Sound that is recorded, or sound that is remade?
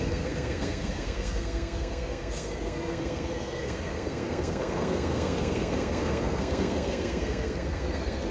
remade